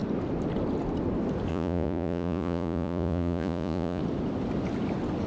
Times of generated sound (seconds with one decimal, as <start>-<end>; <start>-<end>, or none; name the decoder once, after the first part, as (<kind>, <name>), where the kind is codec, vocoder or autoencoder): 1.5-4.0 (vocoder, Vocos)